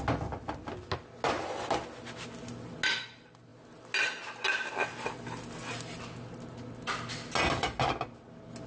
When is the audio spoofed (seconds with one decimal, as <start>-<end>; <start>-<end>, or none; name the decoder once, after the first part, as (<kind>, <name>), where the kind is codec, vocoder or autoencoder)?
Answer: none